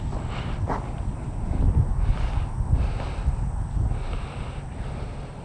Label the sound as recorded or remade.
recorded